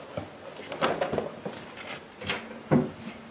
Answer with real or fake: real